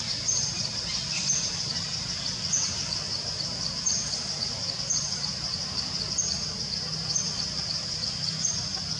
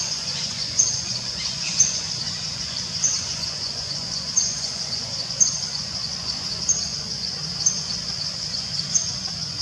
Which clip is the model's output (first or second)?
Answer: second